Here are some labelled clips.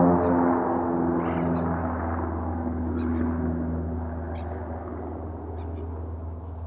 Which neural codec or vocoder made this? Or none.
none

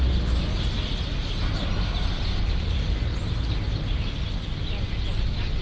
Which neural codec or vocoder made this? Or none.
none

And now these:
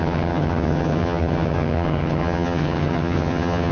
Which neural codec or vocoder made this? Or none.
vocoder, HiFi-GAN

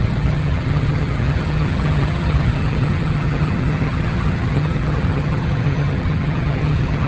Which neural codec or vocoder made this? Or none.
vocoder, HiFi-GAN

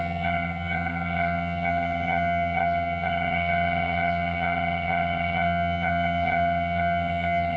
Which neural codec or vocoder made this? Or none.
vocoder, HiFi-GAN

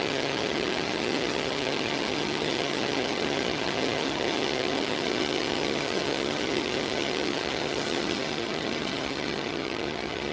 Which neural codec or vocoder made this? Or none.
vocoder, HiFi-GAN